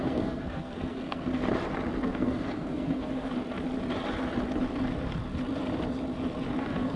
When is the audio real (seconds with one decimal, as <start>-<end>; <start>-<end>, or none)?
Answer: 1.4-2.0; 3.3-6.6